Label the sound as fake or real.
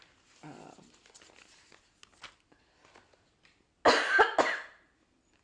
real